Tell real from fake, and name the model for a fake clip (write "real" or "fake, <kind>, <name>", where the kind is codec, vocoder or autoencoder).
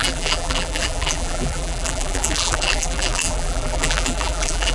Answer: fake, vocoder, BigVGAN v2